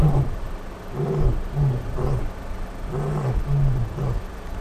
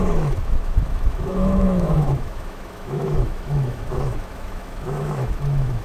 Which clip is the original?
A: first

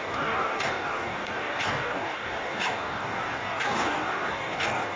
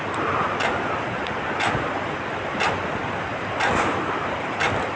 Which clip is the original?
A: second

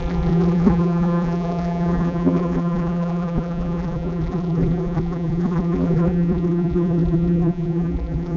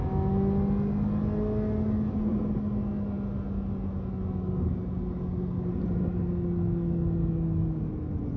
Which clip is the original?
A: second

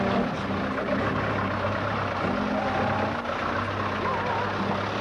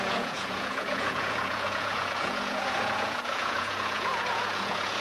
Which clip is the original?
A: first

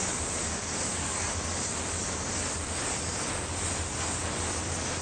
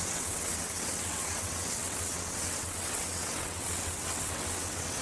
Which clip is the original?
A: first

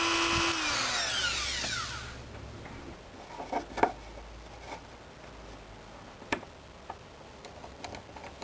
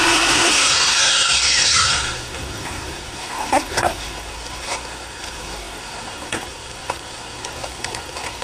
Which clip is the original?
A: first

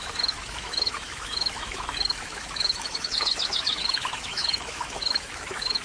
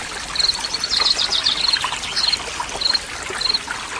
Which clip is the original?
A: second